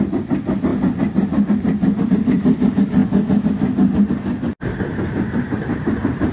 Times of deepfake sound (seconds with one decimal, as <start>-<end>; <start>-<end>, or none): 0.0-0.7; 2.0-3.0; 4.7-6.3